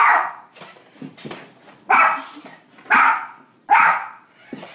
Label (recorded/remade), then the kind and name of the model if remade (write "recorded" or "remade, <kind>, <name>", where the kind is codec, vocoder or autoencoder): recorded